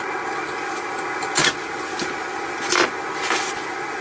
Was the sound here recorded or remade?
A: recorded